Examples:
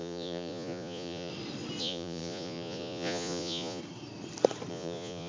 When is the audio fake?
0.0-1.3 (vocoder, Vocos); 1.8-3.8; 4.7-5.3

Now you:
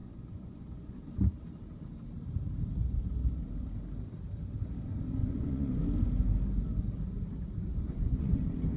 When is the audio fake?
0.0-1.0 (vocoder, Vocos); 5.2-5.8; 7.7-8.4

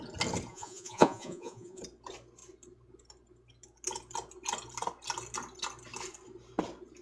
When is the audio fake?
0.5-1.8 (vocoder, Vocos)

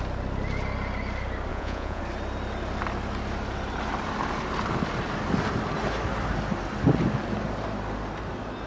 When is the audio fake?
1.5-2.0 (vocoder, Vocos)

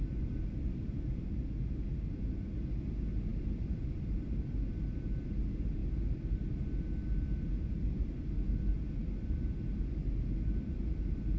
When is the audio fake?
none

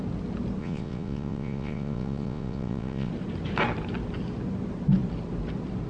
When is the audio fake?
0.6-3.1 (vocoder, Vocos)